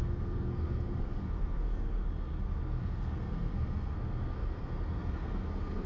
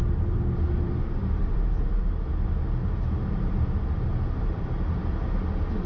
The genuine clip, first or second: second